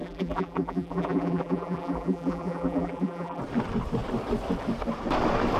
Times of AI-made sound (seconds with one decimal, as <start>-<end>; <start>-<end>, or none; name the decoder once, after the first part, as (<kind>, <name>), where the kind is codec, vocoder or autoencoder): 0.0-3.4 (vocoder, BigVGAN v2)